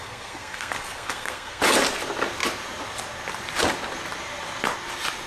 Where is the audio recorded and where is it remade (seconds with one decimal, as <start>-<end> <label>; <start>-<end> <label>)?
0.0-1.6 remade; 1.6-5.3 recorded